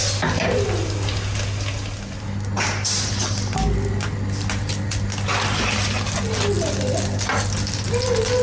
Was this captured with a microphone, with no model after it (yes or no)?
yes